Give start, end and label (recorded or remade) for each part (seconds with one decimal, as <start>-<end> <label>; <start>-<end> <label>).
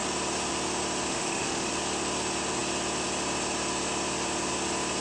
0.0-1.1 recorded; 1.1-1.7 remade; 1.7-5.0 recorded